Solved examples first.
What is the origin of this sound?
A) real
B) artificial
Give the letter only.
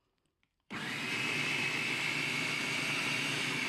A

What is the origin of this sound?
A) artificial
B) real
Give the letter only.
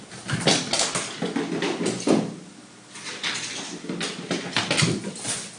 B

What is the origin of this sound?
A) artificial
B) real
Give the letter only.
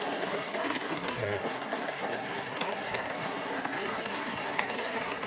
A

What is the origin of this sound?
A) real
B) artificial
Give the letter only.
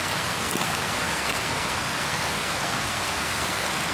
B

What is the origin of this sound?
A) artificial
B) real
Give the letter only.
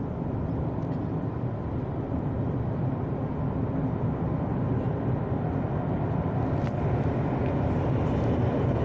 B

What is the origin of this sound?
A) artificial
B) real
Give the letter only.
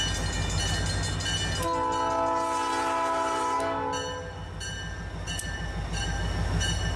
B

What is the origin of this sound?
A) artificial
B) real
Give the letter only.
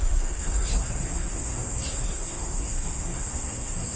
A